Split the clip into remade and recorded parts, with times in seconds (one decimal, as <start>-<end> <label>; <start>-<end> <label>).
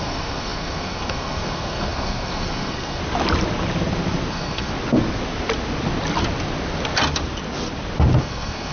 0.0-3.0 remade; 3.0-4.3 recorded; 4.3-4.7 remade; 4.7-8.2 recorded; 8.2-8.7 remade